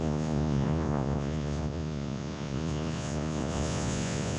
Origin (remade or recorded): remade